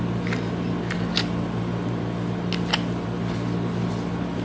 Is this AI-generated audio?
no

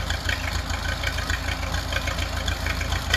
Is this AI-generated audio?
no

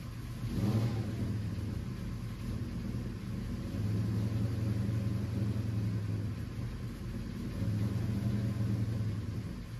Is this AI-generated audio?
no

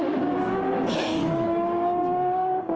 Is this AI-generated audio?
yes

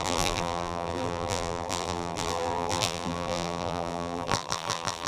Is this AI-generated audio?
yes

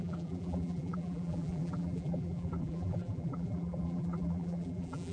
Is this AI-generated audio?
yes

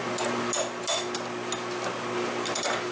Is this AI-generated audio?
no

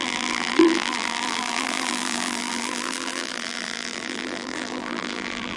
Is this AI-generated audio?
yes